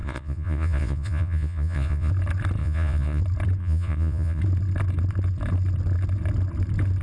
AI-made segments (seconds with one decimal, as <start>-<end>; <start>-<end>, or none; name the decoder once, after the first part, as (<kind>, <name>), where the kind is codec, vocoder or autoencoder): 0.0-2.1 (vocoder, Vocos); 2.6-3.2; 3.6-4.4